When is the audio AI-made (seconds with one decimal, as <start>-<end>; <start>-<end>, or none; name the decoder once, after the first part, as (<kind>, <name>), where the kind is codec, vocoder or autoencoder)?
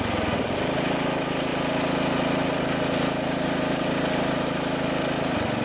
none